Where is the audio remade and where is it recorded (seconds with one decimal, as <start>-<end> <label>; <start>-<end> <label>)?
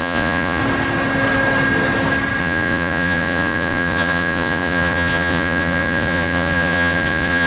0.0-0.6 remade; 0.6-2.4 recorded; 2.4-7.5 remade